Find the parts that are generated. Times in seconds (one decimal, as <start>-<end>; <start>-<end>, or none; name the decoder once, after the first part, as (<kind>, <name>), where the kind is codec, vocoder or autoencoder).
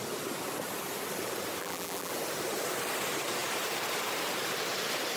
1.6-2.1 (vocoder, BigVGAN v2)